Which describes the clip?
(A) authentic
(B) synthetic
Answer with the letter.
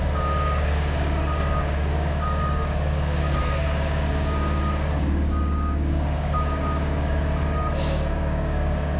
B